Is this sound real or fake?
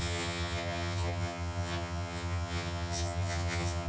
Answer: fake